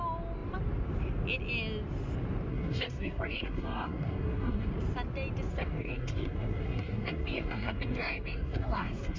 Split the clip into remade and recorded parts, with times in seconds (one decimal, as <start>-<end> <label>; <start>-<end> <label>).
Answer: 0.0-2.5 recorded; 2.5-4.7 remade; 4.7-5.5 recorded; 5.5-9.2 remade